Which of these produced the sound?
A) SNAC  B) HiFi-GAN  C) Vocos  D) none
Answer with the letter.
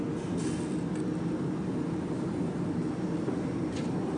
D